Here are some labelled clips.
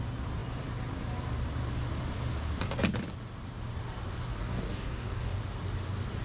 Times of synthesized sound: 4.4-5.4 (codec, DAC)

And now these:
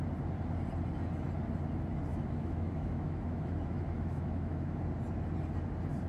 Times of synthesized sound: 2.1-4.8 (autoencoder, DAC-VAE)

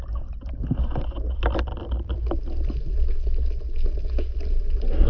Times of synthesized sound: none

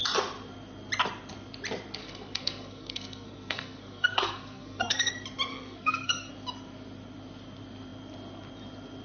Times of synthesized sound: 2.0-5.1 (codec, SNAC); 5.5-6.3

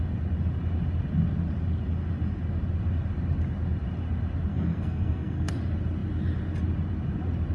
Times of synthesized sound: 4.5-5.5 (codec, SNAC)